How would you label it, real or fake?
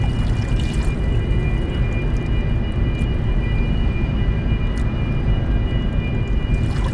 real